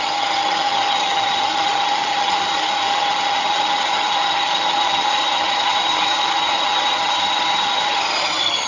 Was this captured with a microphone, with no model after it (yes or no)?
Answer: no